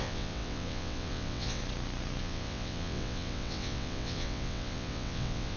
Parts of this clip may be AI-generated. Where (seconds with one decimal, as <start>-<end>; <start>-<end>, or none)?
0.0-1.6; 2.2-5.6